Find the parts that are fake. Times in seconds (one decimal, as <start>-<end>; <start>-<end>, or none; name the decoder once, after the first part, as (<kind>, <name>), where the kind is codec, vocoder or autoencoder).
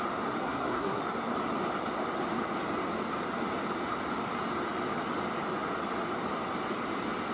0.4-1.0 (codec, SNAC)